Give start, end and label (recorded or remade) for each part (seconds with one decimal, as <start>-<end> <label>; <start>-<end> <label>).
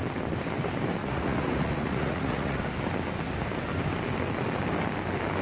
0.0-1.0 recorded; 1.0-2.6 remade; 2.6-5.4 recorded